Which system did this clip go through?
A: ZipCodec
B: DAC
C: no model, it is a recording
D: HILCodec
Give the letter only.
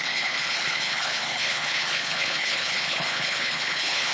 D